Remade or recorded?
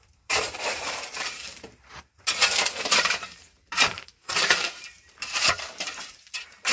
remade